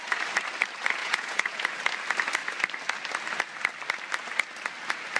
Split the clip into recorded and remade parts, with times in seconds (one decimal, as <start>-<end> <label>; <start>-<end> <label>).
0.0-1.0 recorded; 1.0-1.7 remade; 1.7-5.2 recorded